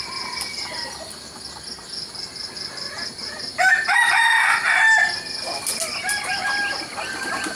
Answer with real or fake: real